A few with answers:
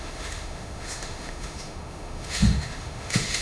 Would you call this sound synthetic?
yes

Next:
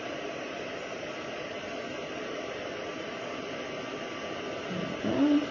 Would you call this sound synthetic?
yes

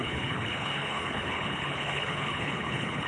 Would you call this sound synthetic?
yes